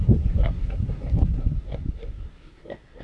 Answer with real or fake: fake